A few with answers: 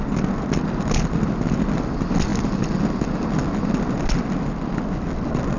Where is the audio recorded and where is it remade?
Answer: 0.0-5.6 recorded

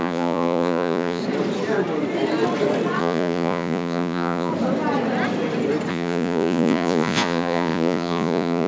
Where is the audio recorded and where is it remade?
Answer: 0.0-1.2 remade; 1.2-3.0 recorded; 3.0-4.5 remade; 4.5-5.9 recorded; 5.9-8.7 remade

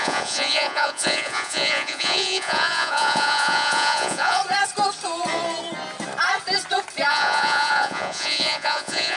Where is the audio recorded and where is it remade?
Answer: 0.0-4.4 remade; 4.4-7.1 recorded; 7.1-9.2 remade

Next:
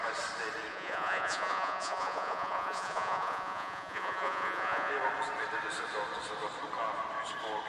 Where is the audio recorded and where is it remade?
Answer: 0.0-0.7 recorded; 0.7-4.9 remade; 4.9-7.7 recorded